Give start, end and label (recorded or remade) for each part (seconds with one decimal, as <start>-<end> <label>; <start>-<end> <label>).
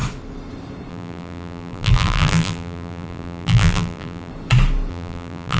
0.0-0.9 recorded; 0.9-4.3 remade; 4.3-4.9 recorded; 4.9-5.6 remade